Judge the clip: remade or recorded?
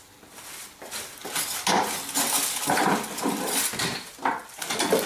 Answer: recorded